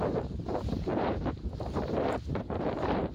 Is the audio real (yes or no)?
no